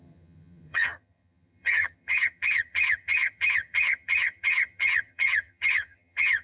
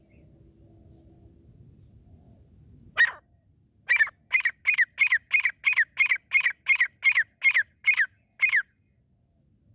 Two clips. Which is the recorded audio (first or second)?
second